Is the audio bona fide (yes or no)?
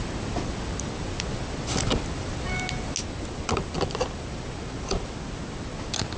yes